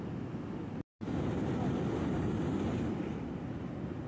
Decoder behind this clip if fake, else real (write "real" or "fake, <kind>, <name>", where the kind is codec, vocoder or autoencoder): real